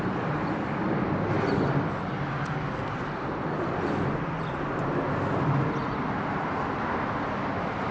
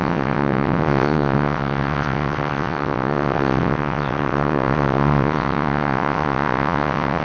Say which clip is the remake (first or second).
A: second